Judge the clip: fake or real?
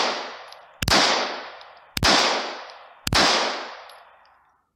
real